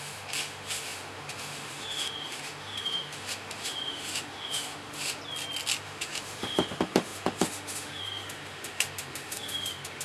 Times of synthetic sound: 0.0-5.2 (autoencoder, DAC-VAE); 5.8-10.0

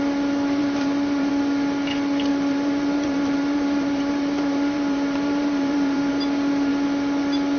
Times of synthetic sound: 0.6-1.3 (vocoder, BigVGAN v2); 2.3-6.1

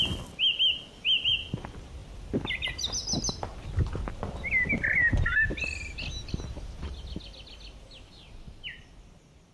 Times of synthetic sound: none

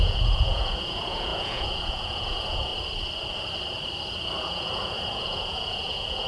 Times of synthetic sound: 0.0-2.7 (vocoder, Vocos); 4.4-6.3

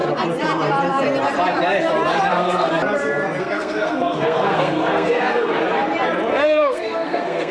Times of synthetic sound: 2.3-2.7 (codec, SNAC); 3.4-5.5; 6.3-7.5